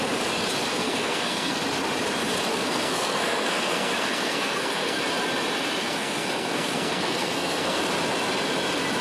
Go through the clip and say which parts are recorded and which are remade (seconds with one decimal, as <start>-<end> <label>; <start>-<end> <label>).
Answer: 0.0-0.7 recorded; 0.7-1.6 remade; 1.6-2.5 recorded; 2.5-5.0 remade; 5.0-5.8 recorded; 5.8-7.8 remade; 7.8-9.0 recorded